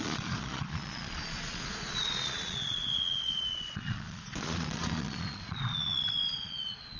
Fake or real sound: fake